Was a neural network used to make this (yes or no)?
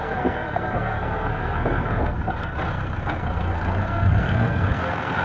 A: yes